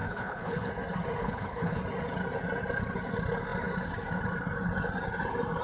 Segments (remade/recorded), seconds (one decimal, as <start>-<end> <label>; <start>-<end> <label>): 0.0-0.7 remade; 0.7-1.2 recorded; 1.2-1.8 remade; 1.8-5.6 recorded